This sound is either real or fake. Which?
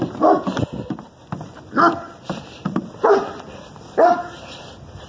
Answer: real